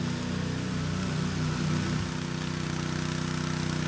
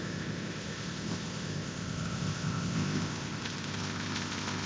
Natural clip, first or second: first